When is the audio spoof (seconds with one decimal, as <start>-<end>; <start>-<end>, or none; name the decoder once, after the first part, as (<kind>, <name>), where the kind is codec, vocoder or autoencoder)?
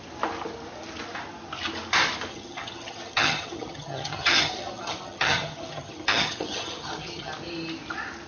2.3-7.3 (vocoder, HiFi-GAN)